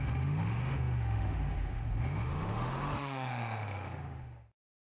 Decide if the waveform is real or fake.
fake